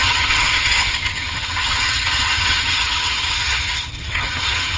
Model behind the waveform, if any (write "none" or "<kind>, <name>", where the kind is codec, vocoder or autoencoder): vocoder, HiFi-GAN